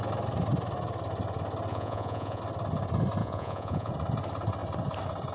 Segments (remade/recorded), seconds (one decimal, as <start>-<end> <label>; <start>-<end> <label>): 0.0-1.7 recorded; 1.7-2.4 remade; 2.4-3.2 recorded; 3.2-3.9 remade; 3.9-5.3 recorded